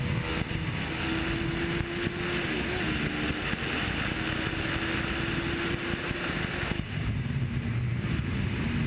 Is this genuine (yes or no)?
yes